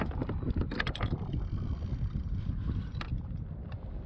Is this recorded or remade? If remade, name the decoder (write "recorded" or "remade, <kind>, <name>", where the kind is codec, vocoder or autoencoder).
recorded